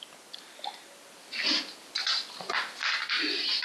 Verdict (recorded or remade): recorded